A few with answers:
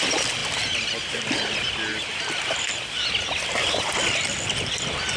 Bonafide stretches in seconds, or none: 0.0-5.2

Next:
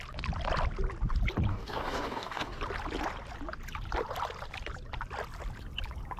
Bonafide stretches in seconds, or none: 0.0-1.5; 2.6-6.2

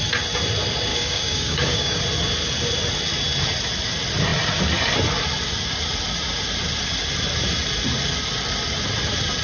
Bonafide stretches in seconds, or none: 0.0-0.9; 2.0-9.4

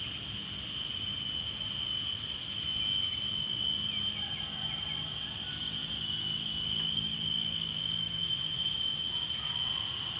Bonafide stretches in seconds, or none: 0.0-5.5; 8.2-10.2